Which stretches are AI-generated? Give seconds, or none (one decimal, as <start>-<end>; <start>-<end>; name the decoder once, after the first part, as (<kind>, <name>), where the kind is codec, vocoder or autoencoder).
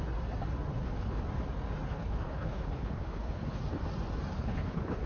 0.7-1.2 (codec, HILCodec); 1.9-3.6; 4.3-5.1